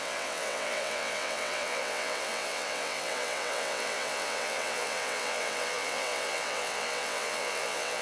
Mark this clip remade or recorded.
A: remade